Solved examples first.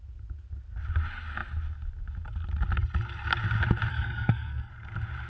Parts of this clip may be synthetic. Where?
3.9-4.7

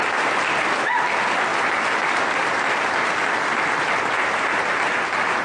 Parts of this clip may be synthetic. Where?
none

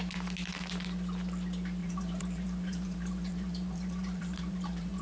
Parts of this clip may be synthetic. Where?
1.8-5.0

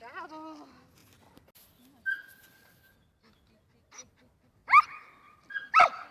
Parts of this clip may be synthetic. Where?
none

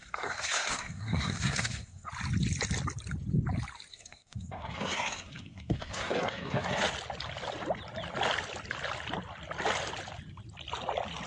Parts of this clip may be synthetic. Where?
0.0-2.1; 3.9-6.8

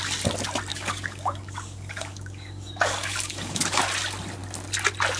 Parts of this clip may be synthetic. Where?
0.7-3.8

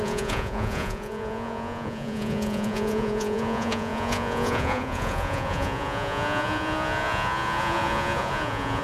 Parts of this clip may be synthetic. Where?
0.0-8.8

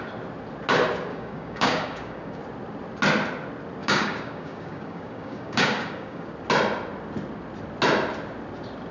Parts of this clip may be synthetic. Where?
1.1-2.4; 3.8-6.3